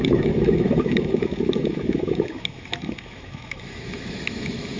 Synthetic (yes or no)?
yes